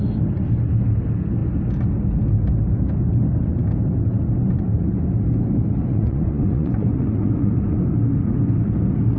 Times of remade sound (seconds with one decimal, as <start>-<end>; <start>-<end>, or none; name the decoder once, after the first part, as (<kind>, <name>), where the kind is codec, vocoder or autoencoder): 5.8-7.8 (vocoder, Vocos)